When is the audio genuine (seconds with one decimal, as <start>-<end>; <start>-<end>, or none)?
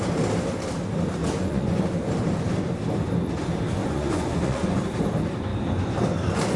0.0-1.2; 1.8-3.8; 4.8-6.6